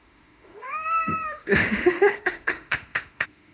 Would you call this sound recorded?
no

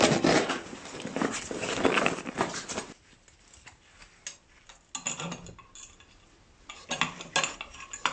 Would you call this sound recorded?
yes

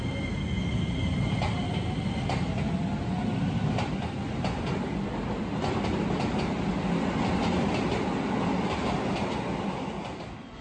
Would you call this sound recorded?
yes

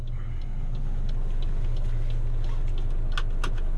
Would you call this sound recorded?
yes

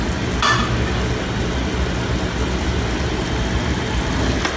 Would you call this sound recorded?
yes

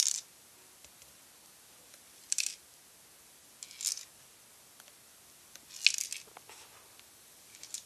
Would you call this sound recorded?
yes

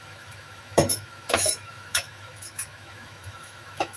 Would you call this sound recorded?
no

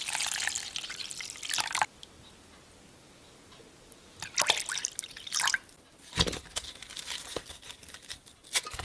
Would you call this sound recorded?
yes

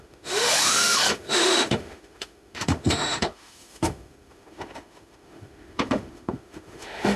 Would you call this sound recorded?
no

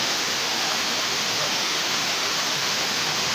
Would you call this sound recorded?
no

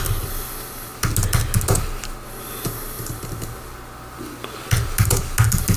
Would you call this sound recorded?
yes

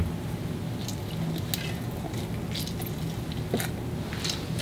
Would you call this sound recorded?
yes